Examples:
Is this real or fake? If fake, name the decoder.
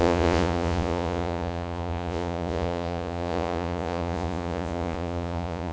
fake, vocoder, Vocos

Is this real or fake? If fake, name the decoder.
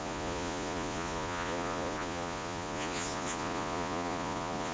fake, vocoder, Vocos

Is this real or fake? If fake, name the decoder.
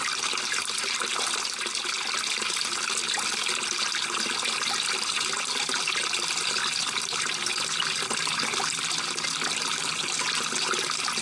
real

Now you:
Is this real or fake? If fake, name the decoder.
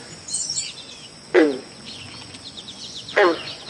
fake, vocoder, Vocos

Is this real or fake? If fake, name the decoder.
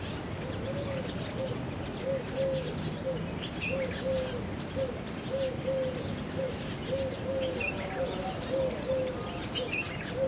real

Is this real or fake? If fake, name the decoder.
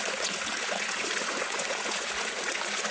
fake, vocoder, Vocos